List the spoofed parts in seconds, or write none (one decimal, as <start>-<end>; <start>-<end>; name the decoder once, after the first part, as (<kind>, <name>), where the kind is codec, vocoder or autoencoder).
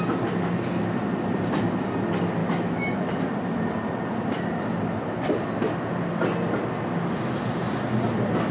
2.4-3.2 (autoencoder, DAC-VAE)